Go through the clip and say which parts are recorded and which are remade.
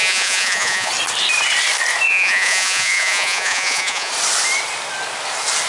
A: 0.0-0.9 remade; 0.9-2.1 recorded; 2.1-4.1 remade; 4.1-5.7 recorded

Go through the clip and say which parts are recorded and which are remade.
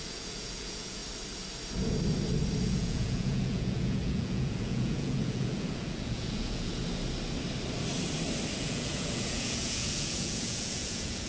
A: 0.0-1.0 remade; 1.0-2.6 recorded; 2.6-6.8 remade; 6.8-8.6 recorded; 8.6-11.3 remade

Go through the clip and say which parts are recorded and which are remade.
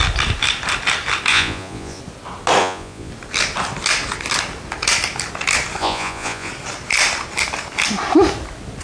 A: 0.0-1.3 recorded; 1.3-2.0 remade; 2.0-2.6 recorded; 2.6-3.1 remade; 3.1-5.8 recorded; 5.8-6.5 remade; 6.5-8.8 recorded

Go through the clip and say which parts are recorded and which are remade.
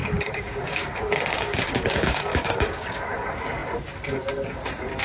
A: 0.0-3.0 remade; 3.0-5.0 recorded